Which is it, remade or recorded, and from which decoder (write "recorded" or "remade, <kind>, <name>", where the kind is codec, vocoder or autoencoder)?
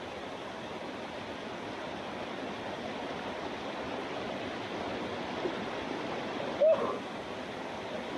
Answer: recorded